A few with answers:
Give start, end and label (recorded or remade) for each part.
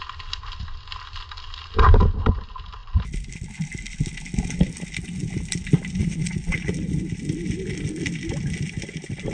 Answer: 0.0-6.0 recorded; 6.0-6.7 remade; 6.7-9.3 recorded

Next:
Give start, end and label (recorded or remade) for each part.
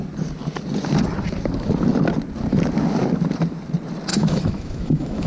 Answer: 0.0-4.1 recorded; 4.1-5.3 remade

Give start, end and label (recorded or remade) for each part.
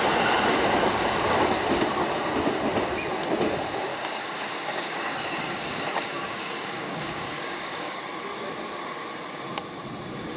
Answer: 0.0-3.9 recorded; 3.9-8.0 remade; 8.0-10.4 recorded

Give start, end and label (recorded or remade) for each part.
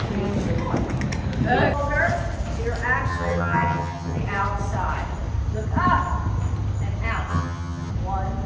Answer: 0.0-3.1 recorded; 3.1-4.2 remade; 4.2-7.3 recorded; 7.3-7.9 remade; 7.9-8.5 recorded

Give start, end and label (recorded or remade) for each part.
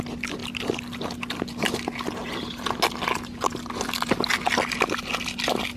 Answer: 0.0-5.8 recorded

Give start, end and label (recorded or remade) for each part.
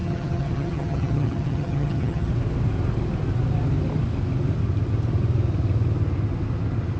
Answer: 0.0-2.3 remade; 2.3-7.0 recorded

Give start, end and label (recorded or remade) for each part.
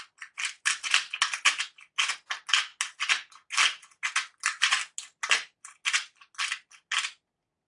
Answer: 0.0-7.7 recorded